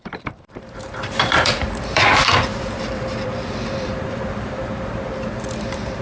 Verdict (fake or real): fake